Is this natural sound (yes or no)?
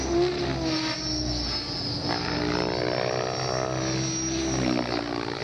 yes